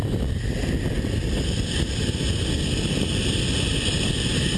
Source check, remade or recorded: recorded